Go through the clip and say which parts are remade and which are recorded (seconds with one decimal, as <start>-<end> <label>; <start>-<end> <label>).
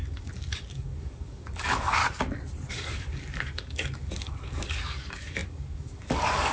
0.0-2.0 remade; 2.0-2.7 recorded; 2.7-6.5 remade